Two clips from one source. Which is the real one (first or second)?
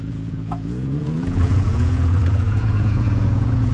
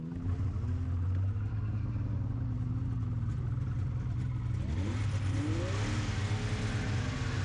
second